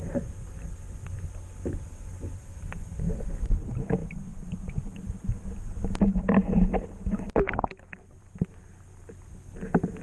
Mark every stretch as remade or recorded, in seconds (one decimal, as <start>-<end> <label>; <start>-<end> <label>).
0.0-2.1 recorded; 2.1-2.9 remade; 2.9-4.0 recorded; 4.0-5.8 remade; 5.8-10.0 recorded